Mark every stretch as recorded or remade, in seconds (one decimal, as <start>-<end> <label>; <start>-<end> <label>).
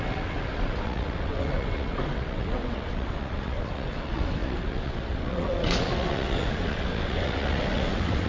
0.0-8.3 remade